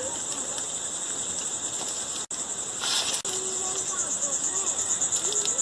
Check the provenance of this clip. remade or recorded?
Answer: recorded